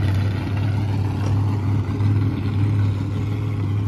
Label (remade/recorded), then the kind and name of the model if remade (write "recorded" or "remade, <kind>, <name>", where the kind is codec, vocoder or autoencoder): recorded